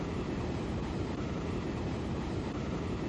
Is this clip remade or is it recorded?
remade